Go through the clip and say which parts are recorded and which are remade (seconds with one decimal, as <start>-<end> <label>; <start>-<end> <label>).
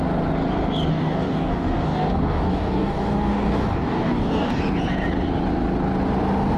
0.0-0.9 recorded; 0.9-4.6 remade; 4.6-6.6 recorded